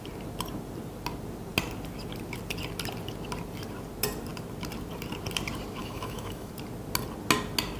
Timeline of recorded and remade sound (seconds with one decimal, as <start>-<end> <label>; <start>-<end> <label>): 0.0-5.8 recorded; 5.8-6.5 remade; 6.5-7.8 recorded

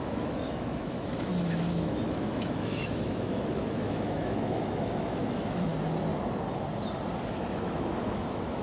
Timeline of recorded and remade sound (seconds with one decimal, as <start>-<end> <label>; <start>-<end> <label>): 0.0-5.7 remade; 5.7-7.4 recorded; 7.4-8.6 remade